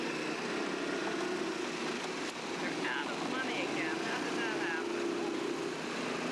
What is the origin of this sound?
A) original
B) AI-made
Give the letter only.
A